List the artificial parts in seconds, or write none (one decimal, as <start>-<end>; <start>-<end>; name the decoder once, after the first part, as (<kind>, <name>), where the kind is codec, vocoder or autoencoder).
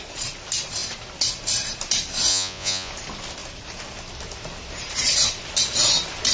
2.3-2.9 (vocoder, Vocos)